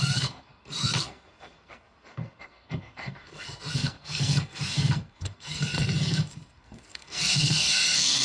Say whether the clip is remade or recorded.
remade